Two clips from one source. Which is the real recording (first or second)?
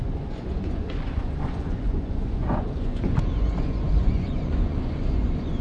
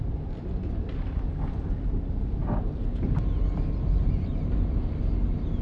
second